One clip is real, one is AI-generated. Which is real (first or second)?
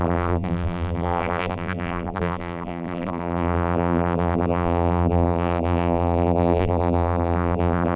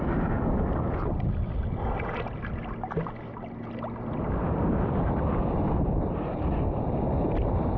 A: second